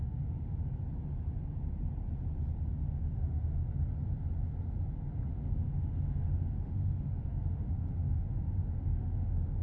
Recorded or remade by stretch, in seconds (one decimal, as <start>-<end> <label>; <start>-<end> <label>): 0.0-0.7 remade; 0.7-2.7 recorded; 2.7-3.6 remade; 3.6-5.3 recorded; 5.3-9.6 remade